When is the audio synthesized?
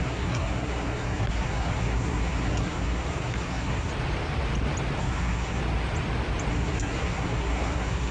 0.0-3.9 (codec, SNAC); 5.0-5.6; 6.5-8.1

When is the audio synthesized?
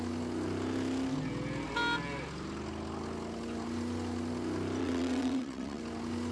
4.8-5.8 (vocoder, WaveNeXt)